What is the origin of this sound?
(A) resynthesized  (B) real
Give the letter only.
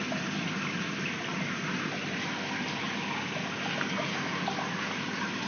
B